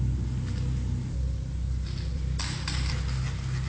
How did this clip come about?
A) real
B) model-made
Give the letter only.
A